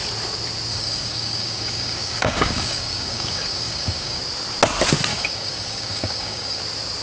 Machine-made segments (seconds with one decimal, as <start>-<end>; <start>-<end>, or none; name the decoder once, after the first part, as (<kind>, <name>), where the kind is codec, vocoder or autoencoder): 0.7-4.2 (codec, DAC); 5.1-6.6